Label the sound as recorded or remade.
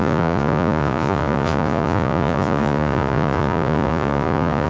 remade